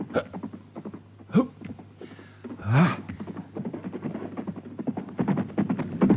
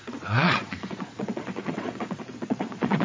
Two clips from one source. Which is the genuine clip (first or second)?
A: first